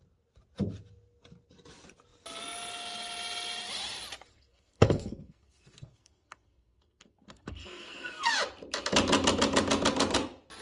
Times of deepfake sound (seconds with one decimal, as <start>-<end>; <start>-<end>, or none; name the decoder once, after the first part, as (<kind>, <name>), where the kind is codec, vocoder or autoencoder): 4.3-8.3 (codec, SNAC)